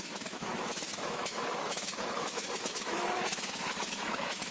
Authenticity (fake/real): fake